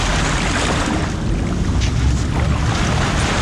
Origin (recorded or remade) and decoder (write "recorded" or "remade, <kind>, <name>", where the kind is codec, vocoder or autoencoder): recorded